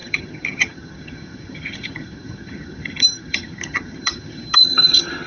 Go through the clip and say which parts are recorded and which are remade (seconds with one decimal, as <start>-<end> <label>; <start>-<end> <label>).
0.0-5.3 remade